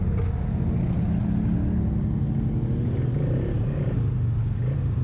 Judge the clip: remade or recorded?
recorded